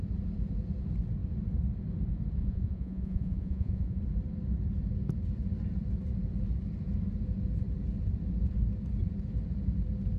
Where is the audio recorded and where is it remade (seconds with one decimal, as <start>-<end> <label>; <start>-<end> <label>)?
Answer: 0.0-2.4 recorded; 2.4-4.0 remade; 4.0-10.2 recorded